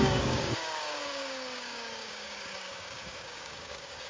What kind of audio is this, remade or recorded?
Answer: remade